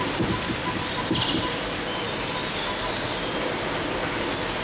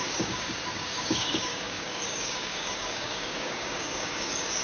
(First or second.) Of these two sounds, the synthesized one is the second